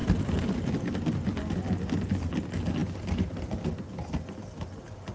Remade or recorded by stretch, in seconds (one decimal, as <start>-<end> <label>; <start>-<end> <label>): 0.0-0.7 remade; 0.7-5.1 recorded